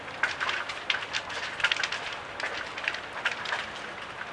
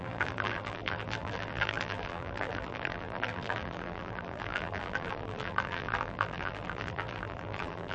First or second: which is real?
first